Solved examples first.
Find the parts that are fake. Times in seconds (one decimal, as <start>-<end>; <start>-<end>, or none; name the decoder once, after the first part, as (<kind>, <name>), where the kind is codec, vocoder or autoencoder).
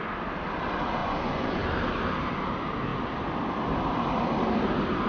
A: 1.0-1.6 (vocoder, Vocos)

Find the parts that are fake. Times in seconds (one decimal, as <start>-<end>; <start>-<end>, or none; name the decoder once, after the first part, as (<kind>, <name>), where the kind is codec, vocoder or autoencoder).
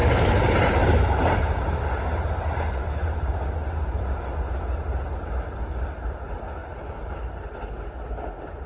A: 0.0-4.2 (vocoder, BigVGAN v2); 6.6-7.7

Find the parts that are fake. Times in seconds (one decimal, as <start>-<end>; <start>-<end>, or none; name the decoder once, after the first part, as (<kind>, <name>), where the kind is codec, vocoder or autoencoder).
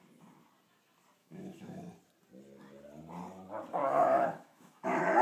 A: 1.2-1.8 (autoencoder, DAC-VAE); 3.8-5.2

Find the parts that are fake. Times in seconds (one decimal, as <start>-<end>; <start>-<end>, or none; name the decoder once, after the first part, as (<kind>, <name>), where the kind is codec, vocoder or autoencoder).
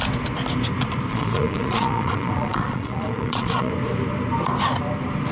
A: 1.1-3.7 (vocoder, Vocos)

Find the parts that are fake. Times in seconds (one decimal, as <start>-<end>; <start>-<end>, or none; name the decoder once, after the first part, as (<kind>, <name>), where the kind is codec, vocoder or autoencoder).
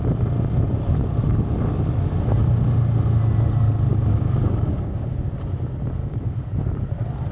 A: 3.9-5.3 (codec, DAC); 6.0-6.5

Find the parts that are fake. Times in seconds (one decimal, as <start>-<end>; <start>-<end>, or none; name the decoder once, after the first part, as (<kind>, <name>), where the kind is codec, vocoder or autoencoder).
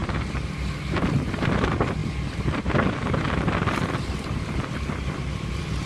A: 1.3-2.0 (vocoder, BigVGAN v2); 5.5-5.9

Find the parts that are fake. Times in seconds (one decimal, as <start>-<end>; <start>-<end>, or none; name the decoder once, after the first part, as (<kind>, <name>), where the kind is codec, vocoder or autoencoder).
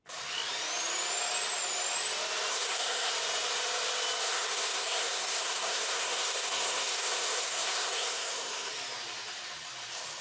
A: 2.5-3.1 (codec, SNAC); 4.2-8.7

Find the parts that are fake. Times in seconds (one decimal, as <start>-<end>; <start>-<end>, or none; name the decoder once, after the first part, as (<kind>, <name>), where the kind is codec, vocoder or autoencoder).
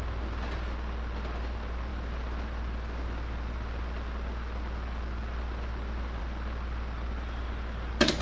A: none